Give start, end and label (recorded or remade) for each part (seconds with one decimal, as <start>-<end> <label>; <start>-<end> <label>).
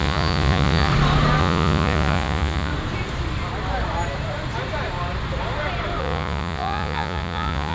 0.0-0.9 remade; 0.9-1.4 recorded; 1.4-2.7 remade; 2.7-6.0 recorded; 6.0-7.7 remade